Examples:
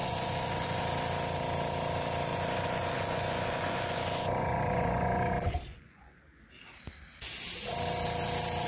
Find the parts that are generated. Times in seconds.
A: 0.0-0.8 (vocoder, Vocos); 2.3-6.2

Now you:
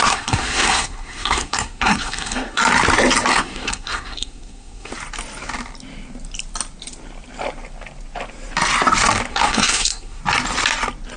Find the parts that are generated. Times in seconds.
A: 0.0-2.6 (codec, SNAC); 3.3-4.9; 9.3-10.2